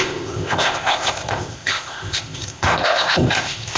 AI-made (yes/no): yes